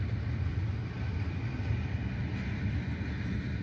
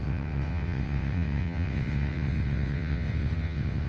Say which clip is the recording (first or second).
first